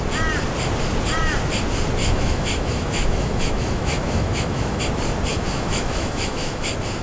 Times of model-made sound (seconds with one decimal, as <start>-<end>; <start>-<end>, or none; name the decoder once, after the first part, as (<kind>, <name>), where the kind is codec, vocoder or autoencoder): 2.0-4.8 (autoencoder, DAC-VAE); 5.3-6.6